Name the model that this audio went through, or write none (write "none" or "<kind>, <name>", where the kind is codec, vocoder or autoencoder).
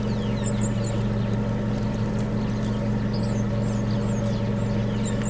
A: none